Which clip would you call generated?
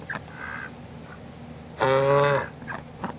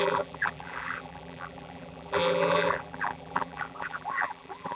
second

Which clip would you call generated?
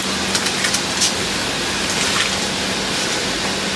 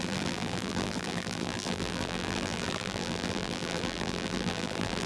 second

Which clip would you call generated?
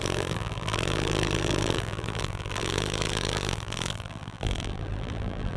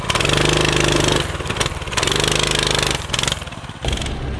first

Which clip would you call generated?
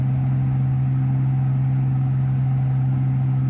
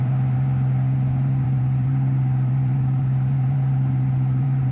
second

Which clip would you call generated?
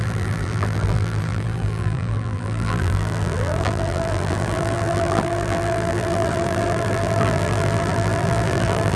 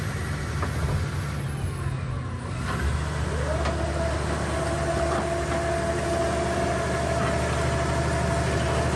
first